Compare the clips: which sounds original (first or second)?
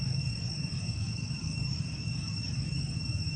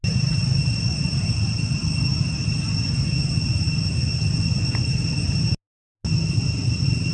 second